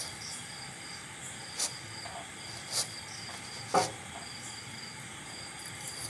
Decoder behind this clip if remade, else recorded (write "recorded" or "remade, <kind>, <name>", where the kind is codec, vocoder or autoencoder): recorded